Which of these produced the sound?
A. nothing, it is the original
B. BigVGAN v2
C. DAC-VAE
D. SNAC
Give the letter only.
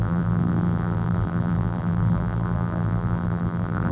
B